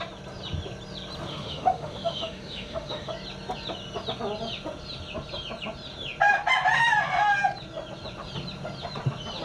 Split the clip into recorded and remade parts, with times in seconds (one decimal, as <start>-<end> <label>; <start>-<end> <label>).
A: 0.0-1.3 recorded; 1.3-3.1 remade; 3.1-9.4 recorded

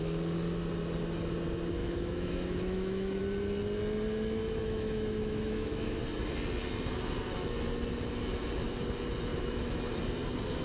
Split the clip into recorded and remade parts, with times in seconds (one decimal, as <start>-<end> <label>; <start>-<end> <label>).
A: 0.0-1.8 recorded; 1.8-3.2 remade; 3.2-4.4 recorded; 4.4-6.0 remade; 6.0-9.3 recorded; 9.3-10.0 remade; 10.0-10.6 recorded

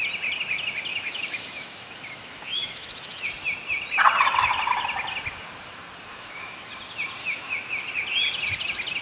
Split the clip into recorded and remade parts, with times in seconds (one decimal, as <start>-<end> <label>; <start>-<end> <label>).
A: 0.0-0.9 recorded; 0.9-3.3 remade; 3.3-6.1 recorded; 6.1-6.7 remade; 6.7-7.2 recorded; 7.2-7.7 remade; 7.7-9.0 recorded

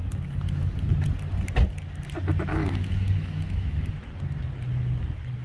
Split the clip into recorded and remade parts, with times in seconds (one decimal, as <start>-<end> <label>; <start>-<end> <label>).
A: 0.0-2.5 recorded; 2.5-3.9 remade; 3.9-5.4 recorded

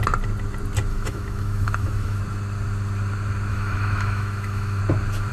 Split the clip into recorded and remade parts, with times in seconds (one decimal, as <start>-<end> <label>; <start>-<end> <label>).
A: 0.0-0.9 recorded; 0.9-2.2 remade; 2.2-3.5 recorded; 3.5-4.8 remade; 4.8-5.3 recorded

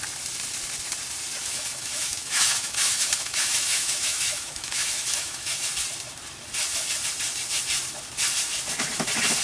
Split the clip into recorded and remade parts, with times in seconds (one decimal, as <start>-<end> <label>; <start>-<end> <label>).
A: 0.0-1.4 recorded; 1.4-5.7 remade; 5.7-9.4 recorded

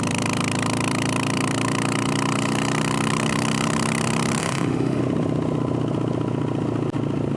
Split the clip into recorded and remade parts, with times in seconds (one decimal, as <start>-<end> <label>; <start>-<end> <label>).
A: 0.0-4.4 recorded; 4.4-5.0 remade; 5.0-7.4 recorded